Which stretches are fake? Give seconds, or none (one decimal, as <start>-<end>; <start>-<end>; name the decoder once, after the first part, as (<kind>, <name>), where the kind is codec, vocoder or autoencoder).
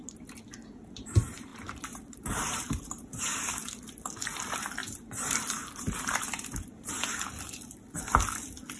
1.5-3.1 (vocoder, BigVGAN v2); 4.8-6.9